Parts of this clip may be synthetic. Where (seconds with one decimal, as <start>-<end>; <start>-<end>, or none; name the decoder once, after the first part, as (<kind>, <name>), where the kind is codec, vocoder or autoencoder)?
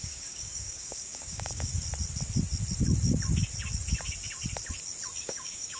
0.0-1.7 (codec, DAC); 5.2-5.8